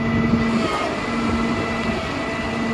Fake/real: real